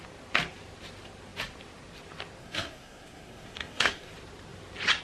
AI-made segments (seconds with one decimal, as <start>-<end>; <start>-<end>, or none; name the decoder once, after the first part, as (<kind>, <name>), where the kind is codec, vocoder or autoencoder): 2.4-4.1 (codec, SNAC)

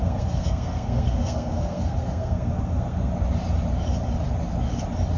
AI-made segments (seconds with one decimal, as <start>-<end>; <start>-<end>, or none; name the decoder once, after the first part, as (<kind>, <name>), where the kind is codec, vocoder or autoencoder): 0.0-3.1 (codec, SNAC)

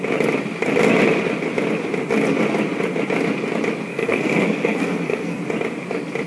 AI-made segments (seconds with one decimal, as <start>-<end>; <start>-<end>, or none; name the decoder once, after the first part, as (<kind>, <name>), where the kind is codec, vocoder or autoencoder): 3.9-5.4 (codec, SNAC)